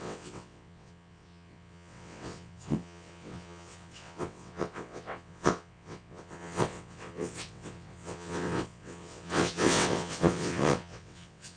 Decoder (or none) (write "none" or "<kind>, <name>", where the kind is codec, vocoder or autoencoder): vocoder, WaveNeXt